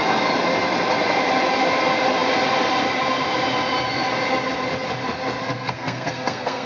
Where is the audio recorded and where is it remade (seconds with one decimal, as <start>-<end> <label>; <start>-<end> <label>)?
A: 0.0-5.4 recorded; 5.4-6.7 remade

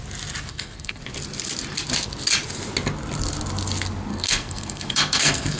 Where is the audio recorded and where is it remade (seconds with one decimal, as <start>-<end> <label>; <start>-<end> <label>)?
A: 0.0-0.5 recorded; 0.5-1.0 remade; 1.0-4.1 recorded; 4.1-5.6 remade

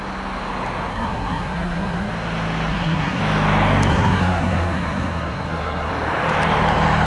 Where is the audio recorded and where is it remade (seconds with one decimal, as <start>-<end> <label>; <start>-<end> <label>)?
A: 0.0-0.9 recorded; 0.9-2.1 remade; 2.1-2.7 recorded; 2.7-3.2 remade; 3.2-3.9 recorded; 3.9-5.9 remade; 5.9-7.1 recorded